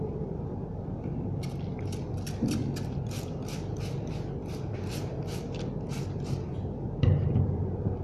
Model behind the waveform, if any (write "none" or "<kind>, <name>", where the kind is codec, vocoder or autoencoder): vocoder, BigVGAN v2